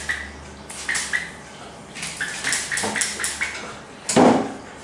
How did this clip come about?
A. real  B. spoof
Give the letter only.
A